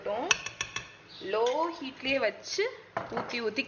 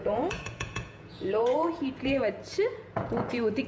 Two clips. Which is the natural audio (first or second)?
first